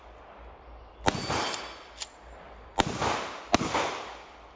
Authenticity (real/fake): real